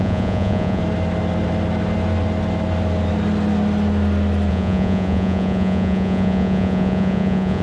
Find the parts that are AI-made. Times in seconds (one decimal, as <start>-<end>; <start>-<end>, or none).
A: 0.0-0.8; 4.5-7.6